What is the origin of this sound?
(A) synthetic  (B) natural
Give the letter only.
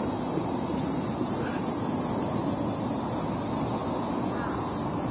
B